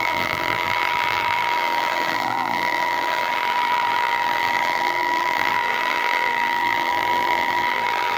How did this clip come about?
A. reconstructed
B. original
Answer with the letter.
A